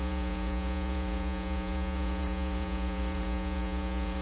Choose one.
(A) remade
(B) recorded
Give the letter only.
A